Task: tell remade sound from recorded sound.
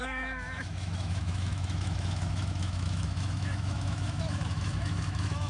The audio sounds remade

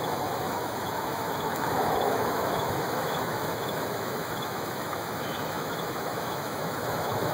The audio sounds remade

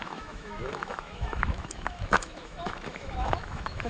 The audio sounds remade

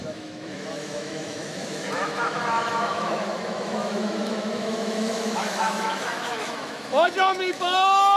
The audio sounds remade